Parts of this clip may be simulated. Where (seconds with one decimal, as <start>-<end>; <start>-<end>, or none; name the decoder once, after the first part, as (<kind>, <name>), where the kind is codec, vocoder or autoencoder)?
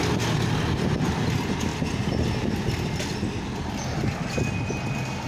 none